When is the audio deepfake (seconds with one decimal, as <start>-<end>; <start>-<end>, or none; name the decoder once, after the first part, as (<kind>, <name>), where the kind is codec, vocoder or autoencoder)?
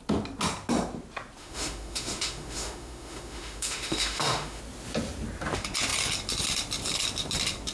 1.4-4.6 (autoencoder, DAC-VAE)